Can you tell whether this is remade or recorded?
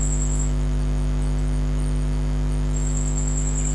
recorded